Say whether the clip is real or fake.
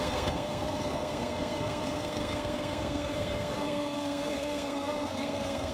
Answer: fake